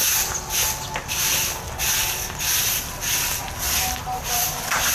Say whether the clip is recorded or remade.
recorded